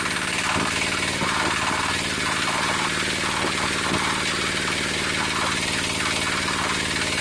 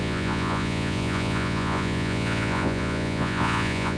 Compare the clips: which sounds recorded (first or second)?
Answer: first